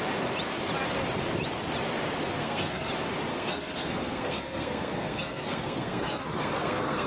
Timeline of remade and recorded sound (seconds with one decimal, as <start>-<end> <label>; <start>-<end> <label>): 0.0-2.4 recorded; 2.4-2.9 remade; 2.9-3.3 recorded; 3.3-7.1 remade